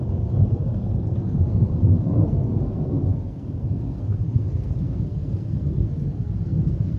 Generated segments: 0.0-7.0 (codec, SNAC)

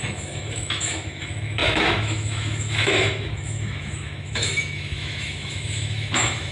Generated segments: 0.0-6.5 (autoencoder, DAC-VAE)

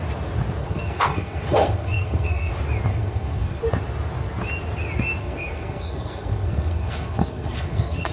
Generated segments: 0.6-2.5 (codec, SNAC); 2.9-3.6; 5.2-8.1